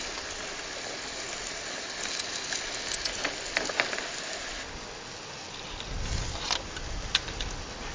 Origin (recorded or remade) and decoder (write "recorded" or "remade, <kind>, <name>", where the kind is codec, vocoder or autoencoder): recorded